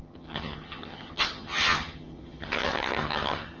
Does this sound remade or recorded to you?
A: remade